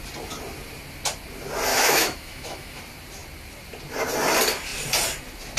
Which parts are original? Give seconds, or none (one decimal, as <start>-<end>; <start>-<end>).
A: 0.0-1.7; 2.8-5.6